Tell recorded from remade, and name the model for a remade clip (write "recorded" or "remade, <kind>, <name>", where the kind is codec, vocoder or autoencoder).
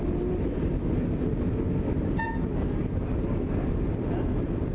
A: recorded